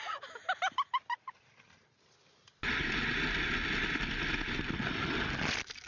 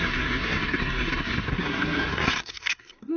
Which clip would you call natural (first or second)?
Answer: first